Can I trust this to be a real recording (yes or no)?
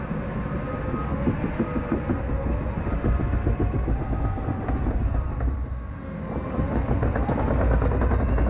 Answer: yes